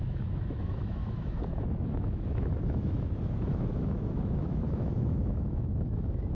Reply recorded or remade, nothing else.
remade